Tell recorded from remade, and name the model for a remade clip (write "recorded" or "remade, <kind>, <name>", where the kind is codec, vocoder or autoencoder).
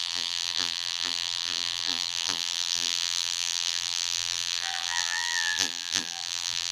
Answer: remade, vocoder, BigVGAN v2